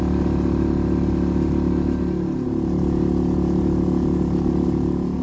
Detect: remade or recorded recorded